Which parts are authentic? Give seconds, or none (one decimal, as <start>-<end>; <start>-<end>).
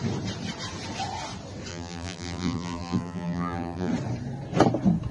0.0-1.7; 3.9-5.1